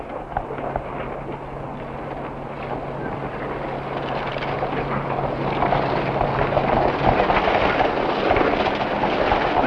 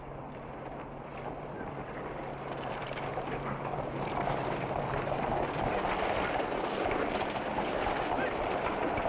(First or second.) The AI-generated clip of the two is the second